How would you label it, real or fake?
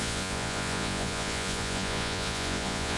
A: fake